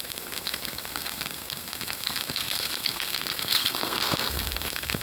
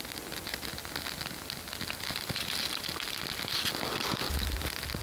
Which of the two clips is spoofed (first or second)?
first